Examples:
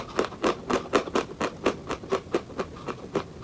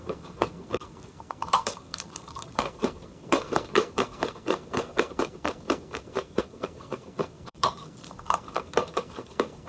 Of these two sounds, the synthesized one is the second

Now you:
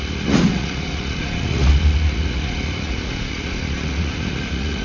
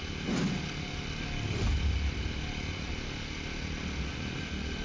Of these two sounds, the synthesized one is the first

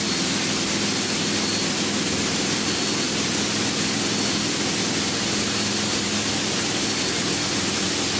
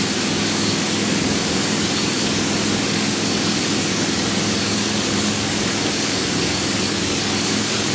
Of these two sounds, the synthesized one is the second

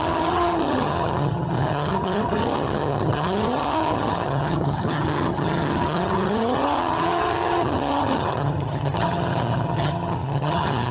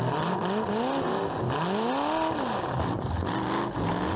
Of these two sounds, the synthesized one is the first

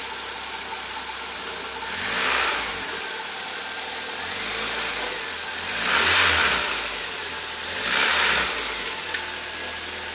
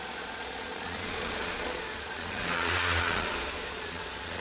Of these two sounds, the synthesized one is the second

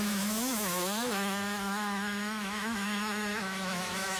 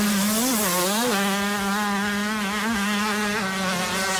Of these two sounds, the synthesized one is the first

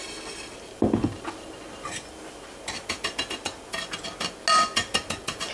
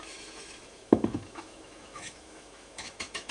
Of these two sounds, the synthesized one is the second